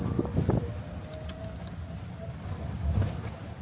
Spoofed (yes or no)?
no